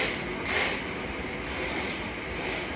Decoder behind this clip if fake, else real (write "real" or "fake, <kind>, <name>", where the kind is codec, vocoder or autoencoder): real